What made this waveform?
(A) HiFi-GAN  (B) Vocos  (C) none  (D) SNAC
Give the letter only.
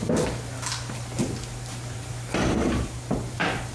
C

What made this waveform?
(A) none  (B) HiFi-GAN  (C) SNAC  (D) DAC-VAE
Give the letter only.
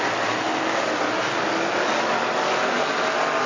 A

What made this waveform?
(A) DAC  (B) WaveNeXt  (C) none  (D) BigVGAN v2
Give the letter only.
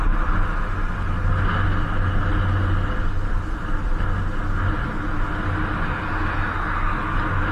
C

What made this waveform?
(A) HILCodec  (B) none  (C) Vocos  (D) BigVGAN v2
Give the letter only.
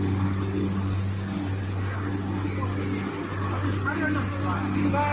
B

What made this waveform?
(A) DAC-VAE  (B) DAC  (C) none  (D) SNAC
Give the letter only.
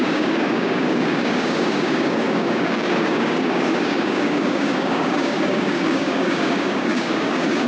B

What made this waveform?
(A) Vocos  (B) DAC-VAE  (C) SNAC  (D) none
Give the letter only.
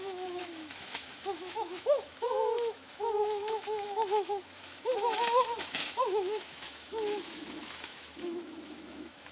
B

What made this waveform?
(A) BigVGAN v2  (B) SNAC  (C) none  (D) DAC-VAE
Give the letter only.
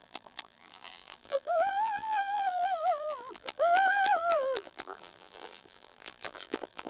A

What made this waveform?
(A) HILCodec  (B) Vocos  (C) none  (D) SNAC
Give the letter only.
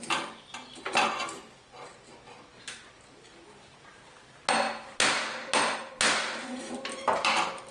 C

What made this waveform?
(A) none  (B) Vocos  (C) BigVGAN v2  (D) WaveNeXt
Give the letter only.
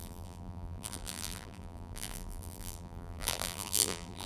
C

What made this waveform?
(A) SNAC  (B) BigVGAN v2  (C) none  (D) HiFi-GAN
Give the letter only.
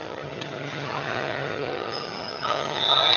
D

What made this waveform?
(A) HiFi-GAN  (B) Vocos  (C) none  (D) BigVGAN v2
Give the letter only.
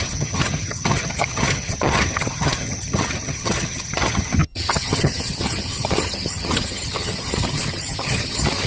A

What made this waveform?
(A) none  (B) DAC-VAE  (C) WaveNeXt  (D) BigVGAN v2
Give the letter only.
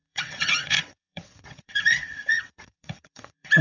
C